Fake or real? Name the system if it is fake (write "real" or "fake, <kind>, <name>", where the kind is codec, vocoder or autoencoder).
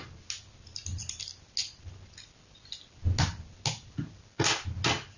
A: real